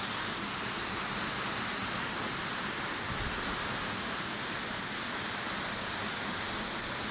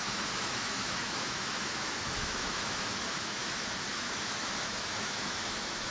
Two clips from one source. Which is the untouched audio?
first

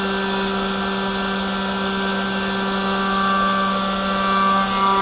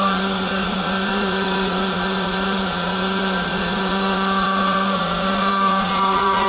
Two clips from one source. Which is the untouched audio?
first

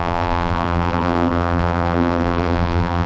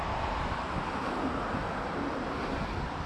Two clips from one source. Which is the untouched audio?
second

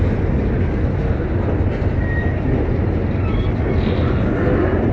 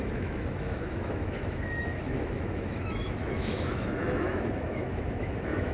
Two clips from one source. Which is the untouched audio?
first